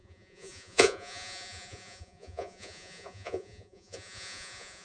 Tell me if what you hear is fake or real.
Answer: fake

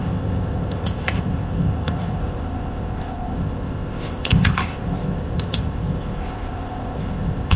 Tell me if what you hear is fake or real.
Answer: fake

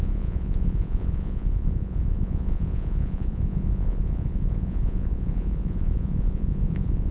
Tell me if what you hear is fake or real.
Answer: fake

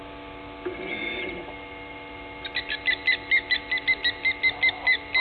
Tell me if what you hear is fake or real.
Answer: real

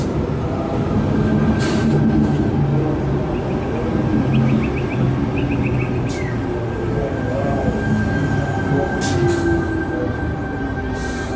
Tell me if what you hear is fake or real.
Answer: real